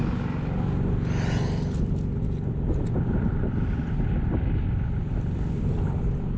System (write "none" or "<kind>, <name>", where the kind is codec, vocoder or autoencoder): none